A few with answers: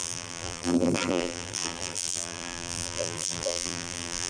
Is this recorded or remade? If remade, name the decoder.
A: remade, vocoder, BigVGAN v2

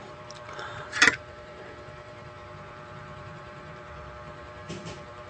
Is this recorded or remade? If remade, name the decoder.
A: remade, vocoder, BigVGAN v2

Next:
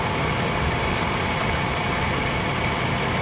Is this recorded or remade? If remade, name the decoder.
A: remade, vocoder, BigVGAN v2